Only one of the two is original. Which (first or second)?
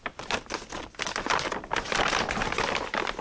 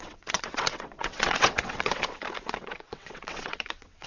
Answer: first